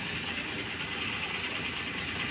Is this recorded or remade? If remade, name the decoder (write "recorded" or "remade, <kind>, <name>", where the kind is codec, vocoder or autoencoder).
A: recorded